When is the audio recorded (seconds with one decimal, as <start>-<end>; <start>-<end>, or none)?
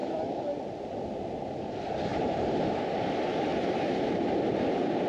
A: 0.0-2.1; 3.0-3.5